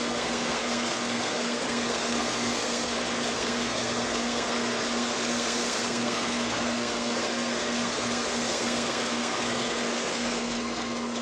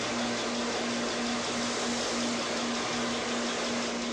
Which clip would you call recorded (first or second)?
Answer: second